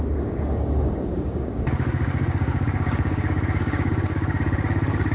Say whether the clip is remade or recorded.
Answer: remade